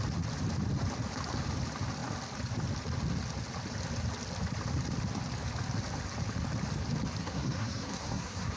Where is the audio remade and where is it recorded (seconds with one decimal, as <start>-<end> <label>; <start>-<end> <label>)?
0.0-7.2 recorded; 7.2-8.6 remade